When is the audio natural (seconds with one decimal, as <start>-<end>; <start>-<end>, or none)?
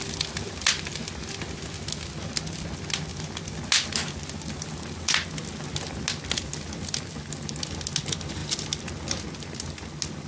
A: 0.0-10.3